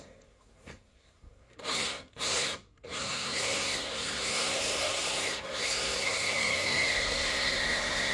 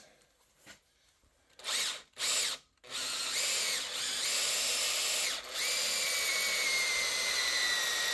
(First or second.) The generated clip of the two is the first